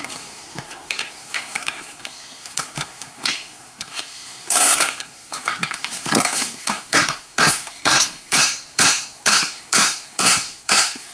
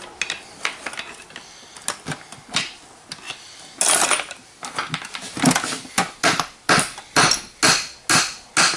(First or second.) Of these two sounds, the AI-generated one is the first